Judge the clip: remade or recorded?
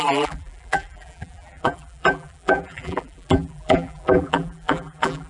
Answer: remade